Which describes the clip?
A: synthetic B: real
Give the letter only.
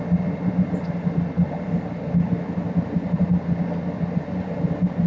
B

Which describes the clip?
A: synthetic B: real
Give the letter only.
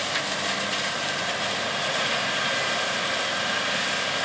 B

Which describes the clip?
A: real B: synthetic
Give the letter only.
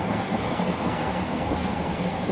B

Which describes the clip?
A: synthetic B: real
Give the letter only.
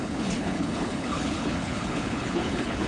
A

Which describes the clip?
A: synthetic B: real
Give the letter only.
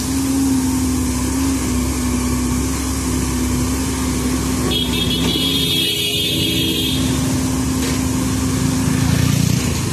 B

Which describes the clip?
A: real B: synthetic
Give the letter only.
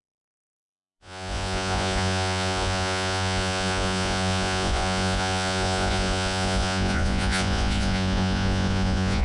B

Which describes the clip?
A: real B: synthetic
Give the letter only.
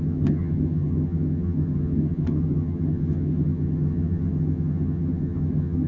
B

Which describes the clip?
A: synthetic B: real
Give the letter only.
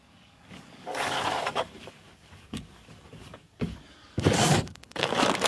A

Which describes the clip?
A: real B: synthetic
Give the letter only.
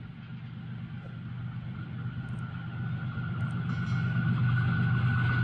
A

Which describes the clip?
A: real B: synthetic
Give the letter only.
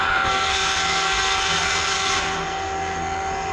B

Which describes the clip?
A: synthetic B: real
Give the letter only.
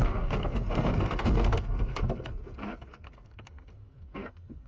A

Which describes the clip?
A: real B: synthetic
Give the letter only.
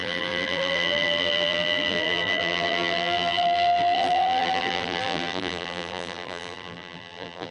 B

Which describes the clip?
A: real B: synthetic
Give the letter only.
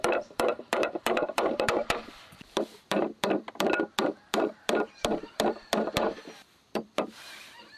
B